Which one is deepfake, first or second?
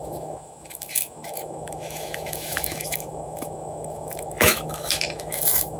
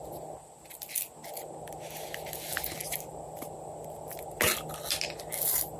first